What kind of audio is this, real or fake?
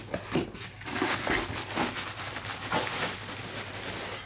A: real